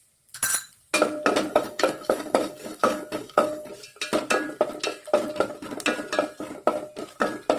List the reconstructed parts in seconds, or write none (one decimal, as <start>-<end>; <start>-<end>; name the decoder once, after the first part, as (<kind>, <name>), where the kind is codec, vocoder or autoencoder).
1.5-3.7 (codec, DAC)